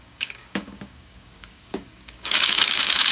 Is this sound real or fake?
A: fake